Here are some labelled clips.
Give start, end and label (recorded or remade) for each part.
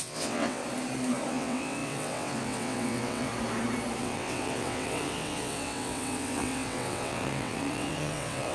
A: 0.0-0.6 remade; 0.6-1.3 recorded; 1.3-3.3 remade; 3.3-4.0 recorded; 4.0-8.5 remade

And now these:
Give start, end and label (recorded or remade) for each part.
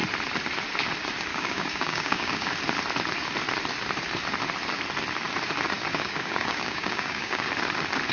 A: 0.0-1.3 recorded; 1.3-2.5 remade; 2.5-5.9 recorded; 5.9-7.5 remade; 7.5-8.1 recorded